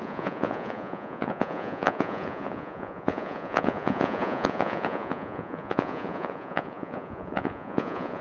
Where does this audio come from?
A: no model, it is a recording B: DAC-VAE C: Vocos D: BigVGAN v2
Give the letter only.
C